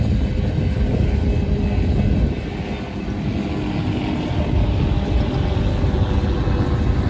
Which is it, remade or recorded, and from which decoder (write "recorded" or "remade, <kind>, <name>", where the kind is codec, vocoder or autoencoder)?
recorded